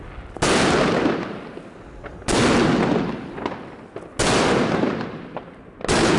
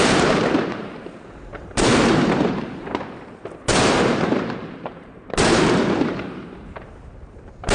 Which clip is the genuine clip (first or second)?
first